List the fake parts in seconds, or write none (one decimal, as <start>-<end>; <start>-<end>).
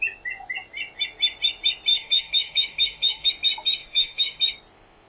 1.9-3.3; 3.8-4.4